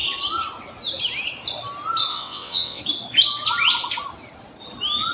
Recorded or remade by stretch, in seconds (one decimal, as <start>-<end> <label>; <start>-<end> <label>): 0.0-2.1 recorded; 2.1-2.8 remade; 2.8-5.1 recorded